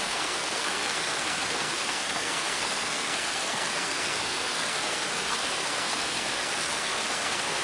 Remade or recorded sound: remade